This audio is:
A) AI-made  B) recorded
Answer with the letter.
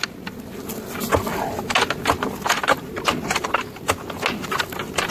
B